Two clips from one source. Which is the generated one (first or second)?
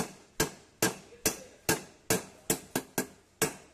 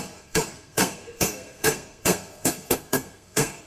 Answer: second